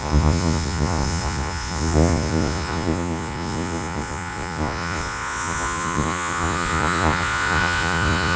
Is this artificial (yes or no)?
yes